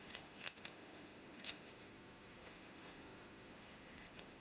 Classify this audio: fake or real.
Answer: fake